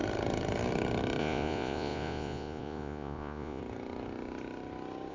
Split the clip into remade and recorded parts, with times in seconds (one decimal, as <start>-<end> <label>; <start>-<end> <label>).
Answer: 0.0-1.2 recorded; 1.2-3.6 remade; 3.6-5.1 recorded